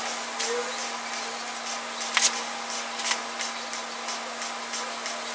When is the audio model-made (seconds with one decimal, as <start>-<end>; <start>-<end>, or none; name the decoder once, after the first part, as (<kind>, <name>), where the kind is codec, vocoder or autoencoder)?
none

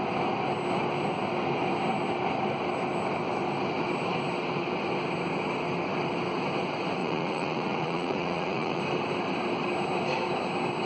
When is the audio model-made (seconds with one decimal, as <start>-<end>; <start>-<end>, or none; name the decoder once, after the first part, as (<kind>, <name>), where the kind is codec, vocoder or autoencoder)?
7.0-8.8 (vocoder, Vocos)

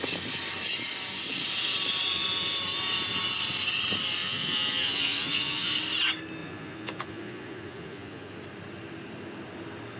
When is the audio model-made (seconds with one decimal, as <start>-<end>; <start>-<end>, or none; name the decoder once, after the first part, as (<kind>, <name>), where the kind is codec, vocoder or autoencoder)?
4.2-5.7 (vocoder, Vocos); 6.4-8.4